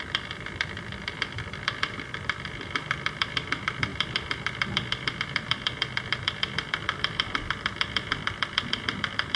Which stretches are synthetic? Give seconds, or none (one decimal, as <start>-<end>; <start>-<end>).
0.0-9.4

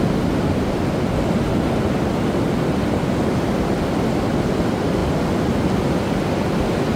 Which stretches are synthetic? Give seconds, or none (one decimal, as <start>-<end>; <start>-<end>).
none

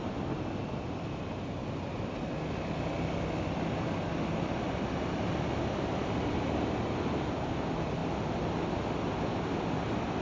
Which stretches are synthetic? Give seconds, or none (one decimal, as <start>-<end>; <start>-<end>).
none

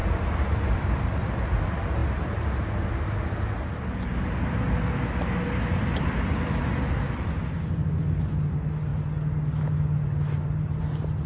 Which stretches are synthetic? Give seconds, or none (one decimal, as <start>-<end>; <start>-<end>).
0.0-1.0; 2.0-3.1; 5.7-7.4

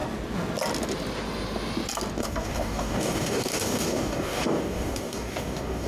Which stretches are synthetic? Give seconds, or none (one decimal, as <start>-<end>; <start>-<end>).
2.2-5.9

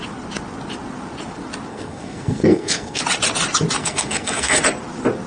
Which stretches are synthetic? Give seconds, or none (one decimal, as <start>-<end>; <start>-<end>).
1.7-3.0; 3.8-4.6

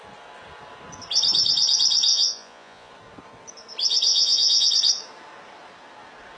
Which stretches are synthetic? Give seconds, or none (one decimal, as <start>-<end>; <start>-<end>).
2.1-2.9; 4.1-4.7